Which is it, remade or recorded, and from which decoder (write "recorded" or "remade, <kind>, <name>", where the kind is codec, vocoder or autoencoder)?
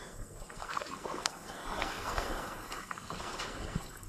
remade, codec, SNAC